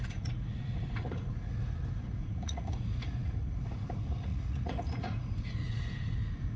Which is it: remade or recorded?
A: remade